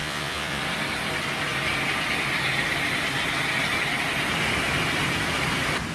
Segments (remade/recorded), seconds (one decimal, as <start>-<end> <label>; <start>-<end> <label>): 0.0-0.6 remade; 0.6-5.9 recorded